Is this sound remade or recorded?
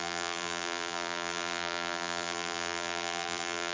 remade